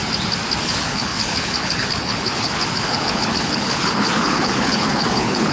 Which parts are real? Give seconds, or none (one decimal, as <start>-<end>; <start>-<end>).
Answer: 0.0-0.6